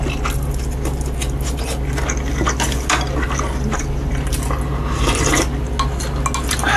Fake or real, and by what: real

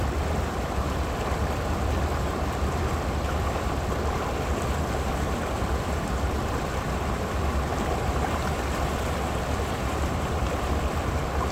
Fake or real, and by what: real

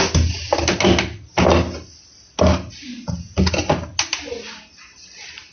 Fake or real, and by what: real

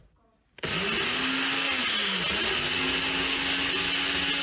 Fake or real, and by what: real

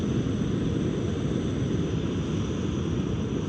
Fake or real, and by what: real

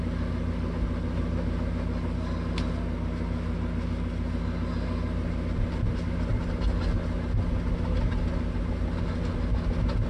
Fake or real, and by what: real